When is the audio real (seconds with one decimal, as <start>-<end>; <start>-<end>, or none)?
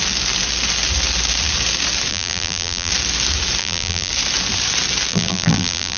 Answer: 0.0-2.1; 2.9-3.6; 4.1-5.1